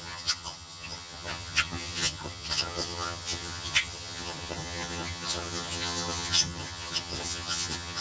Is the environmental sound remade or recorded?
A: remade